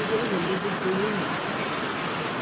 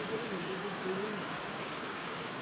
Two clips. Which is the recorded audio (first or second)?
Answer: first